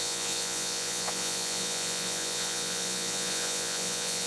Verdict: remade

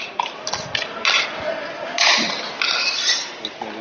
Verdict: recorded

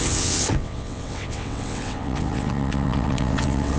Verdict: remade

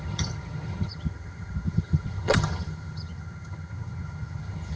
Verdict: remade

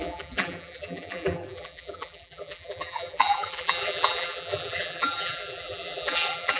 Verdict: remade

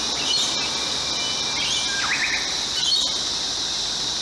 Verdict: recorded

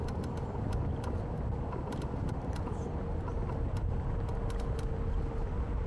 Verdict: recorded